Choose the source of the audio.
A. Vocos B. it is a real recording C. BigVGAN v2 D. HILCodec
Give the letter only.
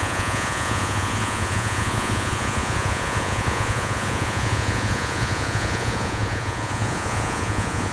A